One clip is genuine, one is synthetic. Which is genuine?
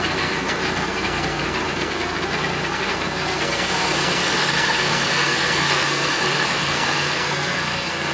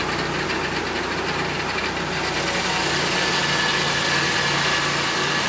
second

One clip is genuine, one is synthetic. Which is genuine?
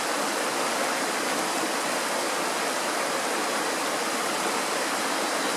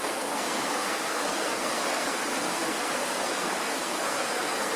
first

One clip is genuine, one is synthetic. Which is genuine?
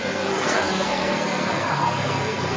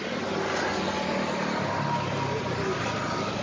second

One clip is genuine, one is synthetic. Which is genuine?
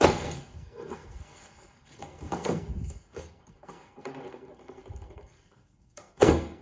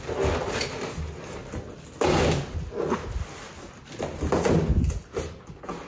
second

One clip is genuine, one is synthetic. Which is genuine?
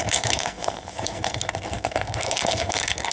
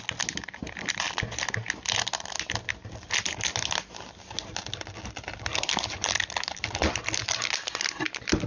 second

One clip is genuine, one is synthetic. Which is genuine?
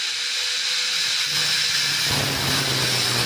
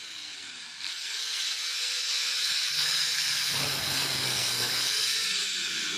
first